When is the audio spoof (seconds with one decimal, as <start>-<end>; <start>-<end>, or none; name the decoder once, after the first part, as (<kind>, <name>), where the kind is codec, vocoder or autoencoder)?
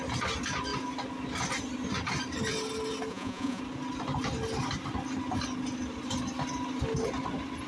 3.1-3.6 (vocoder, Vocos)